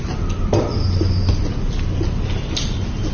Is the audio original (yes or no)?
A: yes